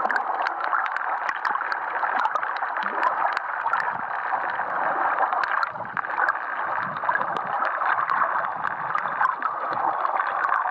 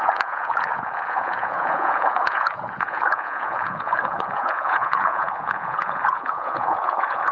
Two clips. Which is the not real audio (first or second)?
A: second